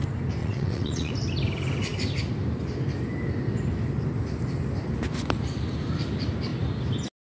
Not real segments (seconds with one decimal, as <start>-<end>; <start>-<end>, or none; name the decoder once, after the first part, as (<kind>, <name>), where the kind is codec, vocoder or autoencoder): 0.4-1.1 (vocoder, WaveNeXt)